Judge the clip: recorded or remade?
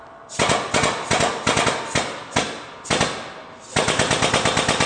recorded